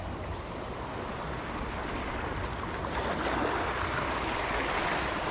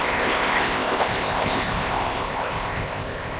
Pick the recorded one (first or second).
first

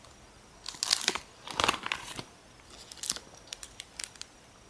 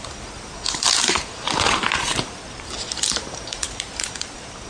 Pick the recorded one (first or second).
first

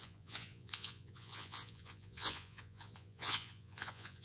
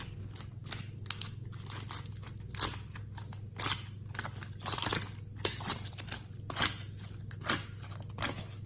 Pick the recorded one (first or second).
second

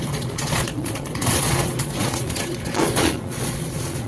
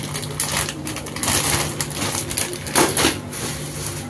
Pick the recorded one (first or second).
second